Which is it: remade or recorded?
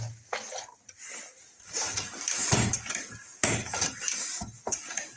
recorded